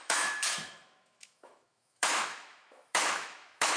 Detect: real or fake fake